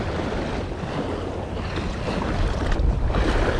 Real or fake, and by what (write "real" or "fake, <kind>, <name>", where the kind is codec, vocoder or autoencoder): fake, vocoder, BigVGAN v2